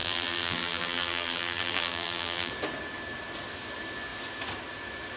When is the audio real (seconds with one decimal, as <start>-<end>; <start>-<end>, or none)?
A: 2.5-5.2